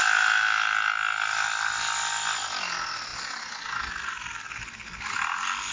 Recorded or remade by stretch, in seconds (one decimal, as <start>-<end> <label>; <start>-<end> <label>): 0.0-5.7 recorded